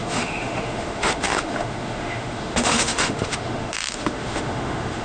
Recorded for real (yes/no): no